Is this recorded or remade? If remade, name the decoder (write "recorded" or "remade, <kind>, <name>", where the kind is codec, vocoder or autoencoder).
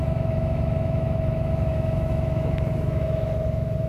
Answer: remade, autoencoder, DAC-VAE